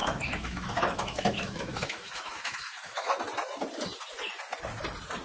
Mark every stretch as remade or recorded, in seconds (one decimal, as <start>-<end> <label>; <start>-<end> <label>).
0.0-3.1 remade; 3.1-5.2 recorded